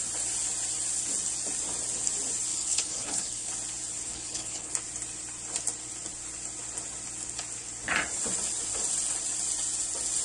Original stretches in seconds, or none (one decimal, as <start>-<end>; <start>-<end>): 0.0-2.5; 3.5-4.1; 4.7-10.2